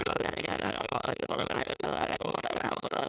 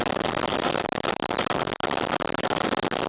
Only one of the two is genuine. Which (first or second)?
second